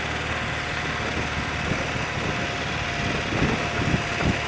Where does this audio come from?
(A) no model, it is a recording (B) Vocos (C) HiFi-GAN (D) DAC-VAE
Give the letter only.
A